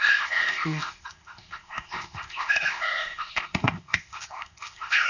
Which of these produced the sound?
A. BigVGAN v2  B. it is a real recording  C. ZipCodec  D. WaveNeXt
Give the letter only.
C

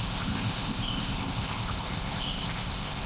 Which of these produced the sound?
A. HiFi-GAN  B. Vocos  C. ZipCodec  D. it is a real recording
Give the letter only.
C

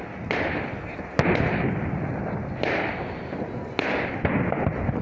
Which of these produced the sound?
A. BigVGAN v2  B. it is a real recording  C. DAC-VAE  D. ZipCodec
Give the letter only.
B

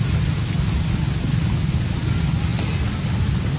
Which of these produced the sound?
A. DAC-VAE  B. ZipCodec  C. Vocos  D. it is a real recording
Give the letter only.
D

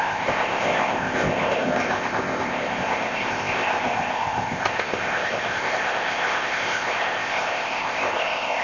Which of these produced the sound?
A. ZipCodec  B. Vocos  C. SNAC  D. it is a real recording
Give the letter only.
A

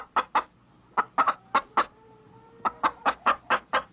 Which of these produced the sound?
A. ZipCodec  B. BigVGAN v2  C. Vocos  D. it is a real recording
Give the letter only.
D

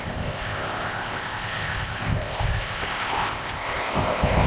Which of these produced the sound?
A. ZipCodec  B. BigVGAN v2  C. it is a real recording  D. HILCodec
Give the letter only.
A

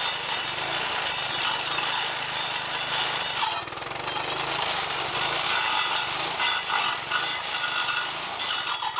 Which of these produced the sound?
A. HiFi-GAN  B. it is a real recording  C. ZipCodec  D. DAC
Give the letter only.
B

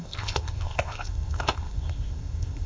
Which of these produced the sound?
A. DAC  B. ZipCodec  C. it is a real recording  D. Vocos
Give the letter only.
B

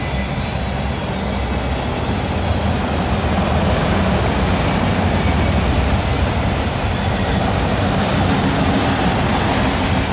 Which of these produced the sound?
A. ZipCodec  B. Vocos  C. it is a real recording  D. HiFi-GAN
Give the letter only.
C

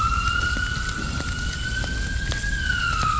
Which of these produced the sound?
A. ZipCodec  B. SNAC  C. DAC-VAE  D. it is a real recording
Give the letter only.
D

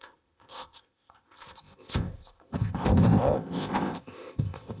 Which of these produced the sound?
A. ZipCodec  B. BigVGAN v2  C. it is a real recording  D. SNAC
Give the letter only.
A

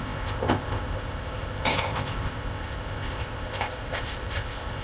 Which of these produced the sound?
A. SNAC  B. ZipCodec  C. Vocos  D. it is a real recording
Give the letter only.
B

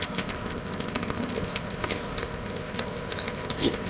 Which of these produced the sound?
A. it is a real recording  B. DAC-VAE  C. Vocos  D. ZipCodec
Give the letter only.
D